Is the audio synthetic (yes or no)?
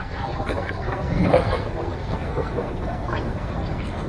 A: yes